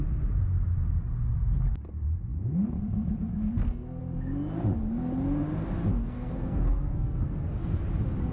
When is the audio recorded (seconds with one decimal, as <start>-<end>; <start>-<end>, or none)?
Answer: 0.0-3.3; 4.0-6.0; 7.8-8.3